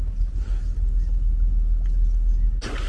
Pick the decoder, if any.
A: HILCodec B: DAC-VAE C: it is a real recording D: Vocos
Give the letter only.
C